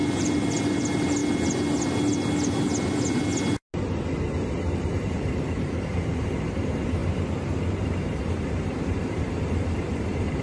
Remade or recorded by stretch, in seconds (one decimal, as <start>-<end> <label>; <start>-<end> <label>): 0.0-1.2 remade; 1.2-4.8 recorded; 4.8-10.4 remade